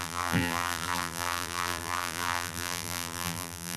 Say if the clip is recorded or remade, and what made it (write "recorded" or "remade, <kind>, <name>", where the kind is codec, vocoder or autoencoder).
remade, vocoder, BigVGAN v2